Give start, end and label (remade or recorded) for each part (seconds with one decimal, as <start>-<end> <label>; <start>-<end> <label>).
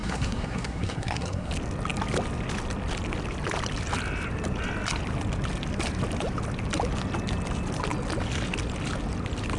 0.0-1.5 remade; 1.5-9.6 recorded